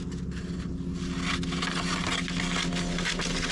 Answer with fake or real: real